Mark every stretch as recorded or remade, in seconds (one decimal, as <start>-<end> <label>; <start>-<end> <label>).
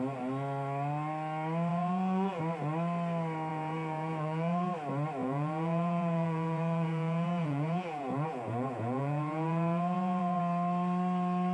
0.0-1.7 recorded; 1.7-2.4 remade; 2.4-3.5 recorded; 3.5-4.7 remade; 4.7-5.2 recorded; 5.2-10.4 remade; 10.4-11.5 recorded